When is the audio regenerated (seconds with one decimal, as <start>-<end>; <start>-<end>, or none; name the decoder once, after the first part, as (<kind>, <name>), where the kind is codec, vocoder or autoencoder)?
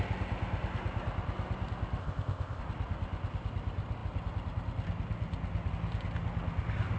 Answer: 2.0-2.6 (codec, ZipCodec)